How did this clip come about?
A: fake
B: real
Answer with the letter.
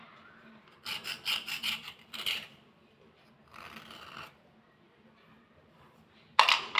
A